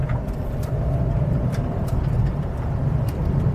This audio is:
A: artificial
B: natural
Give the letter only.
B